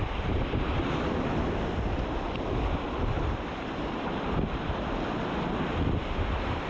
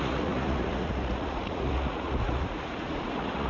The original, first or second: first